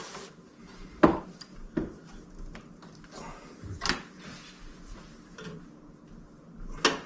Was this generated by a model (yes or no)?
no